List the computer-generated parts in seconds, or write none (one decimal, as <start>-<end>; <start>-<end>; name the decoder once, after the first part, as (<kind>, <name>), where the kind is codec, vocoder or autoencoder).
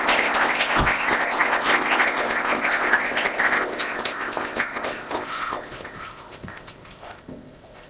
0.0-7.9 (codec, ZipCodec)